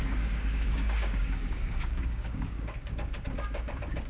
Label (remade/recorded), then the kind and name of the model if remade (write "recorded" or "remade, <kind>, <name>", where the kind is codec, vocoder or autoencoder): remade, codec, DAC